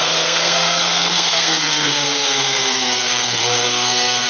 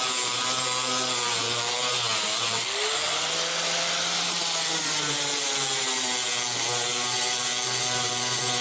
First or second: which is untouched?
second